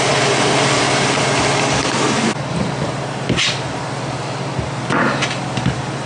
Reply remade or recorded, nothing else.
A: recorded